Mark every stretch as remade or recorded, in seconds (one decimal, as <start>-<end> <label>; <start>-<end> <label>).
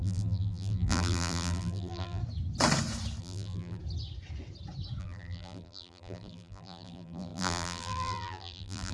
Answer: 0.0-2.2 remade; 2.2-3.2 recorded; 3.2-3.8 remade; 3.8-5.0 recorded; 5.0-8.9 remade